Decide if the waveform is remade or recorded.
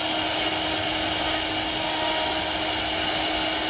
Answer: recorded